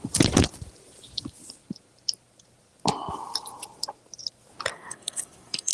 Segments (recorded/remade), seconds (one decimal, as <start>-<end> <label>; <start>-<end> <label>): 0.0-4.7 recorded; 4.7-5.7 remade